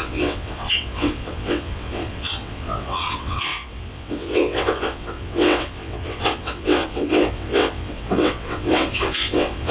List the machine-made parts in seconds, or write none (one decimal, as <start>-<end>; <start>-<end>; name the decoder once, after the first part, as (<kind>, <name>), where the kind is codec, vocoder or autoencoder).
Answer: 0.0-9.7 (vocoder, WaveNeXt)